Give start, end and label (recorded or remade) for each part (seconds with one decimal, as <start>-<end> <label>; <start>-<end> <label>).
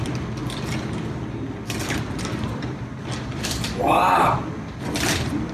0.0-0.4 remade; 0.4-2.5 recorded; 2.5-5.5 remade